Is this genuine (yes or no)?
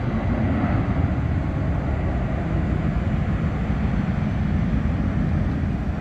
yes